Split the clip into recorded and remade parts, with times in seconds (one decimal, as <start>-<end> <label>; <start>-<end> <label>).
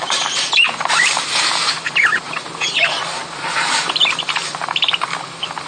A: 0.0-3.2 remade; 3.2-3.7 recorded; 3.7-5.7 remade